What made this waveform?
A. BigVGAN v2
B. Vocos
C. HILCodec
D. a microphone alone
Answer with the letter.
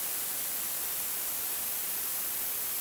D